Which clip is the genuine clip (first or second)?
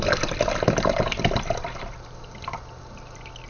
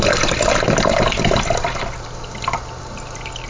second